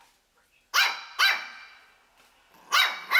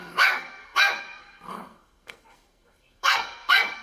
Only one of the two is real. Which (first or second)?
first